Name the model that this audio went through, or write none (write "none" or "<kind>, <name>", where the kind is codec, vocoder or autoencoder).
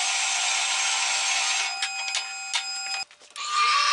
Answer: none